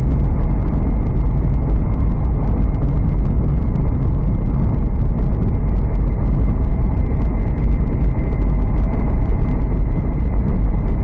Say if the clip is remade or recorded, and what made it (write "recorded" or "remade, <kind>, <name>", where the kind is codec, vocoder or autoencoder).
recorded